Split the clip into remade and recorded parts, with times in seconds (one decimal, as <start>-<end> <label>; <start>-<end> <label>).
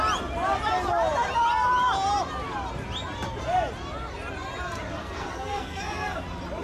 0.0-5.0 recorded; 5.0-5.8 remade; 5.8-6.6 recorded